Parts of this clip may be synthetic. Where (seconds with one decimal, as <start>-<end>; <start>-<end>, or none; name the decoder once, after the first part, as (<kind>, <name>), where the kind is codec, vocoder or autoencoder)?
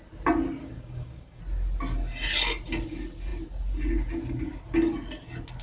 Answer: 0.6-1.4 (codec, DAC)